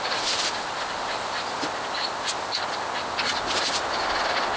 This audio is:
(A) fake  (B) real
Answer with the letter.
B